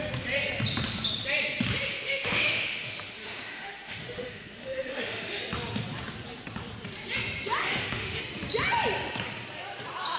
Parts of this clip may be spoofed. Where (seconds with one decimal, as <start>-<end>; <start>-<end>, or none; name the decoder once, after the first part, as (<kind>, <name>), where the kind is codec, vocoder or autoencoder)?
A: 1.9-5.4 (autoencoder, DAC-VAE); 7.6-8.2